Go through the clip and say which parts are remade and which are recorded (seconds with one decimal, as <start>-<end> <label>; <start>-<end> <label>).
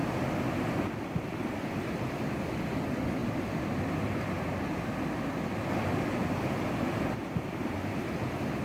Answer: 0.0-8.6 recorded